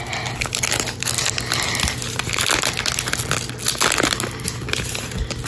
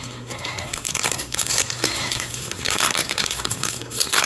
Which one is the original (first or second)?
first